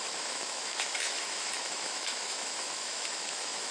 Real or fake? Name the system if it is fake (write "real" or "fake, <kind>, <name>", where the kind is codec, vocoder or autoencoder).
fake, autoencoder, DAC-VAE